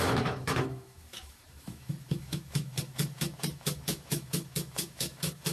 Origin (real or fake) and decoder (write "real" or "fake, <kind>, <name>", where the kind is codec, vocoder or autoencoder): fake, autoencoder, DAC-VAE